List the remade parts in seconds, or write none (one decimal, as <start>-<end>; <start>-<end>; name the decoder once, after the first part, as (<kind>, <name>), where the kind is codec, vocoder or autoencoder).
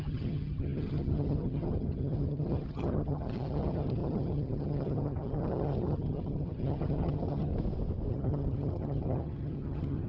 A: 0.0-7.5 (vocoder, HiFi-GAN); 8.1-10.1